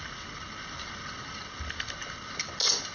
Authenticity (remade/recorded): recorded